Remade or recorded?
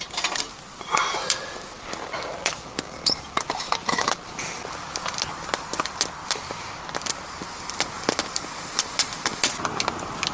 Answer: recorded